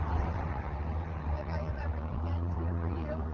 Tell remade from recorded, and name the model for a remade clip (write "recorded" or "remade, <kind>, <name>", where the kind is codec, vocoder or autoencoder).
remade, vocoder, WaveNeXt